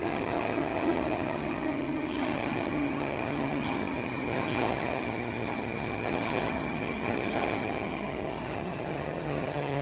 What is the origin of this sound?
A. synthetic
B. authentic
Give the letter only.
A